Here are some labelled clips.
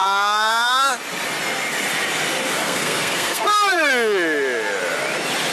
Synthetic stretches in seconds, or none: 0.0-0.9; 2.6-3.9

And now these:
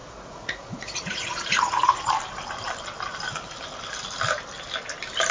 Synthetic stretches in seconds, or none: 0.0-2.1

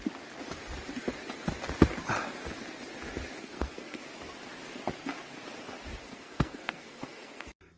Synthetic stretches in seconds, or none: 3.4-4.0; 6.0-7.8

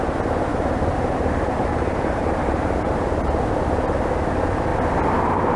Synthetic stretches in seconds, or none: 0.5-2.9

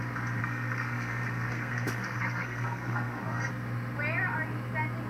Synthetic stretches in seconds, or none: 0.4-3.5